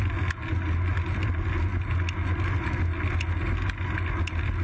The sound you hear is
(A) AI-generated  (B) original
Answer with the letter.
B